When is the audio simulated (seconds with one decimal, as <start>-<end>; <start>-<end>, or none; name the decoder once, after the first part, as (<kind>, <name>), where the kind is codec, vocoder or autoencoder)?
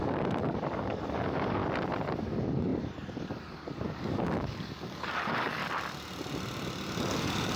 0.0-1.6 (codec, DAC); 2.2-5.6; 7.0-7.6